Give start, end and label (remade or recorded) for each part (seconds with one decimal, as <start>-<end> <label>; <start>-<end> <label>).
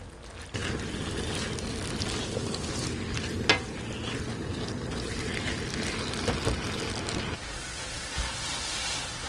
0.0-9.3 recorded